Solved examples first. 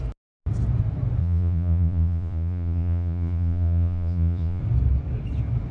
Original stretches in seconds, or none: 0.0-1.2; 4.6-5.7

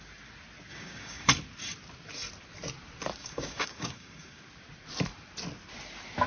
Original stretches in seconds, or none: 0.0-0.7; 1.3-3.2; 4.4-6.3

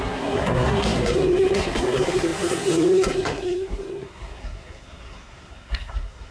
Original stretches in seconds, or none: none

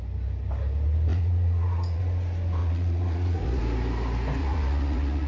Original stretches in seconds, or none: 0.0-1.1; 2.0-2.6; 3.6-4.4

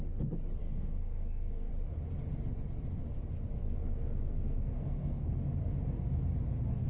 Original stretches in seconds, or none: 0.0-0.6; 1.7-3.6; 5.3-6.9